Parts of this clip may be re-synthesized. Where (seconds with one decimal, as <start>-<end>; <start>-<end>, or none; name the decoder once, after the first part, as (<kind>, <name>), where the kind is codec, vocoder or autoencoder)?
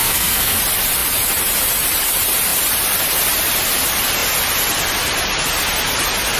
0.0-0.6 (codec, SNAC)